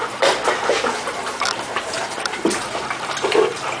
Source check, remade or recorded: remade